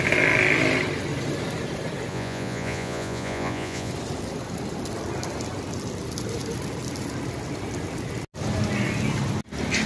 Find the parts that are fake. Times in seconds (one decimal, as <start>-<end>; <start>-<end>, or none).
2.1-3.9